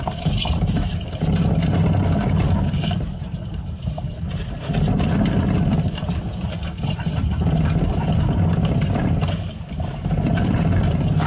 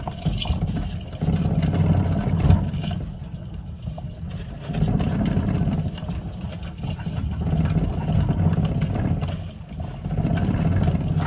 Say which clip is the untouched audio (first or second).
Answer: second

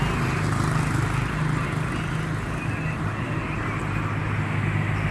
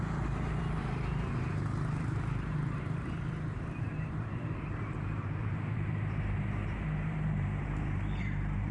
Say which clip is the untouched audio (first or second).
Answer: first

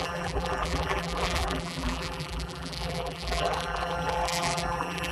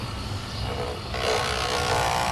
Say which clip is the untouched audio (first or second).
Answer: second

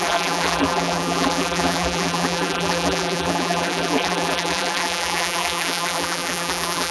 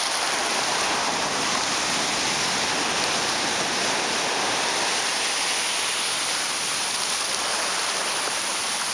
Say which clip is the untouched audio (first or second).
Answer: second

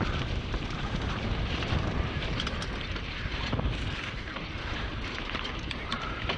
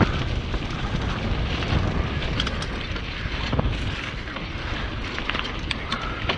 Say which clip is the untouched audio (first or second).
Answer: second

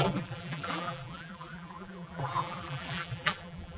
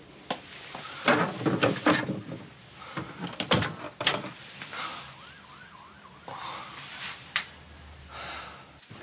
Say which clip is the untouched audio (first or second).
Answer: second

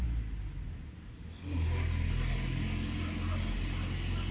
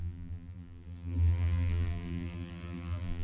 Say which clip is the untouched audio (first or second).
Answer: first